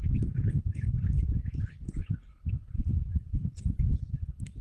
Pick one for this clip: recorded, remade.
remade